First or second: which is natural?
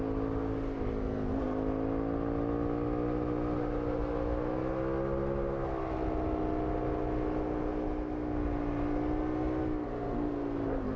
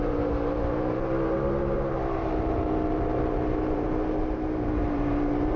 first